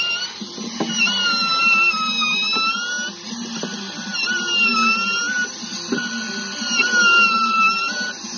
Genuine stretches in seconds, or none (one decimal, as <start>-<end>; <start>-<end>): 0.0-8.4